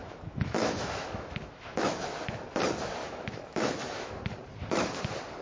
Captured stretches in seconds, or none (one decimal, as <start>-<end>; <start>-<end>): 2.1-3.0; 4.1-5.4